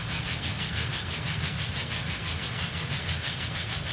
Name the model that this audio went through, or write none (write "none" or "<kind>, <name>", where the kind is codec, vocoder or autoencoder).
codec, SNAC